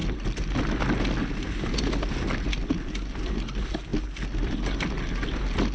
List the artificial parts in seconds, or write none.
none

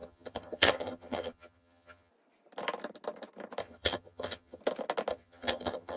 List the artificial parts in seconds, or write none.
0.0-2.1 (vocoder, HiFi-GAN); 3.6-4.6; 5.1-6.0

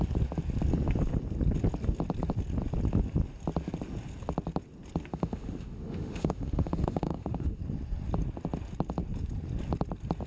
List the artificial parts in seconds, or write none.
5.1-7.6 (autoencoder, DAC-VAE)

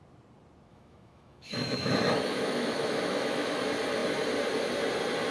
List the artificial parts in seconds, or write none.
0.7-3.6 (autoencoder, DAC-VAE)

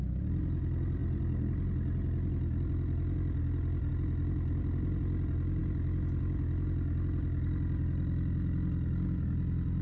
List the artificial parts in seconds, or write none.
none

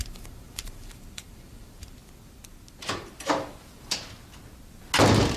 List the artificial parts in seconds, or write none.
0.0-2.0 (vocoder, BigVGAN v2)